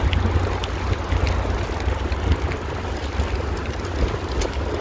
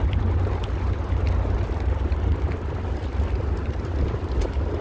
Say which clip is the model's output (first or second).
second